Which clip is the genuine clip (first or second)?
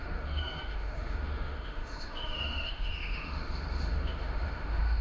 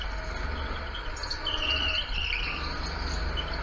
second